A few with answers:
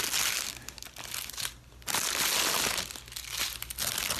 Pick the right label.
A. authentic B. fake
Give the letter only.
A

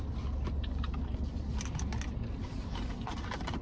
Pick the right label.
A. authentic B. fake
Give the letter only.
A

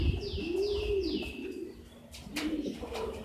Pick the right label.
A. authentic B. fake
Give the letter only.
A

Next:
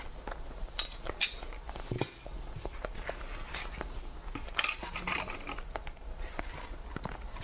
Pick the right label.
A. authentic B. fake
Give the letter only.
A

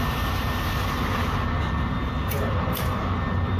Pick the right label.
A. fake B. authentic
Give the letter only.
B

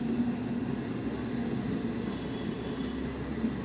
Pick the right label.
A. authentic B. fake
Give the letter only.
A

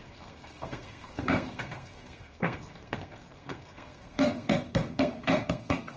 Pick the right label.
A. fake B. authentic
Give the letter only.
A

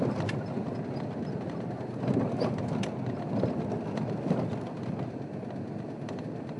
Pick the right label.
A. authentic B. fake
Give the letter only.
A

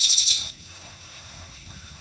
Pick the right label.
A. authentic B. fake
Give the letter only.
B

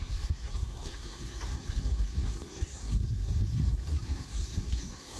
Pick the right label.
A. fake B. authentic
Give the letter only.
A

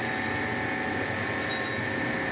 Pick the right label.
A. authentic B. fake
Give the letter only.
A